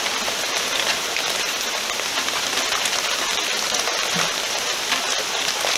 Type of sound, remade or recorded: recorded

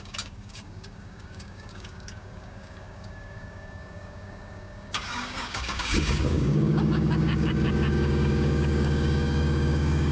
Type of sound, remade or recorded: remade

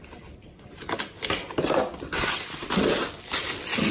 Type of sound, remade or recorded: recorded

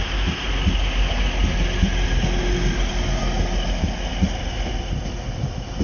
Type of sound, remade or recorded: recorded